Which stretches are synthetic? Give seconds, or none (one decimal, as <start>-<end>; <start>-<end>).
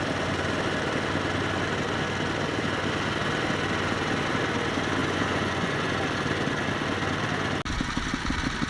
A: 5.0-5.9